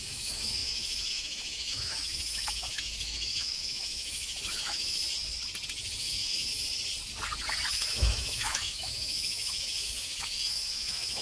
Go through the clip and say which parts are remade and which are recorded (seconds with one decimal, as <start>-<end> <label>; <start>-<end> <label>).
0.0-5.0 remade; 5.0-6.0 recorded; 6.0-6.5 remade; 6.5-7.7 recorded; 7.7-11.2 remade